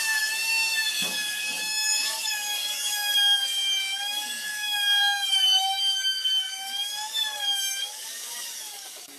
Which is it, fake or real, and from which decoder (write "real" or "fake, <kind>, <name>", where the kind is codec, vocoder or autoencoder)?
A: fake, codec, DAC